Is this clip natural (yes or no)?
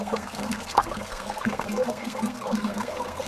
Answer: no